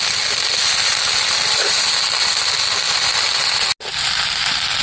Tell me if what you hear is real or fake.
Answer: real